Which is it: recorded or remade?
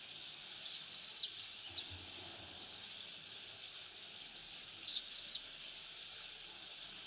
recorded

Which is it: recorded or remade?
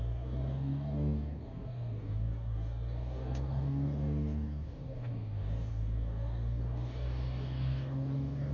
remade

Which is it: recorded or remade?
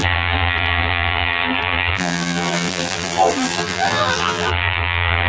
remade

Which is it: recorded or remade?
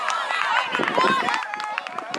recorded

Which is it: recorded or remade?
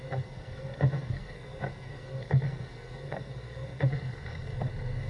remade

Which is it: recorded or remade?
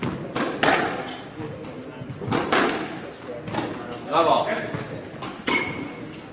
recorded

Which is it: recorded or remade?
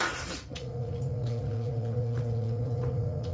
remade